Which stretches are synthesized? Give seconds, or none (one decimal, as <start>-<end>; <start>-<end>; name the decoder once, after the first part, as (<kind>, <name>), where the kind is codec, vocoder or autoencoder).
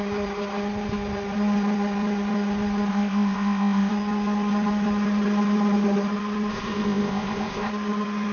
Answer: 2.9-3.9 (codec, ZipCodec); 6.5-7.7